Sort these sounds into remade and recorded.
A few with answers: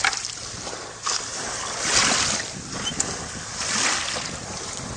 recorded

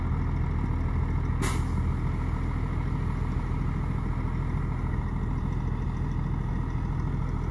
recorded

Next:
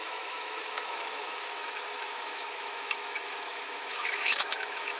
remade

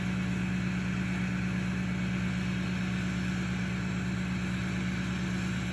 recorded